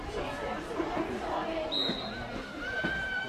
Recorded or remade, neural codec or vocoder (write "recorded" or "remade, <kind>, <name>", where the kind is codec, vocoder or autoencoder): recorded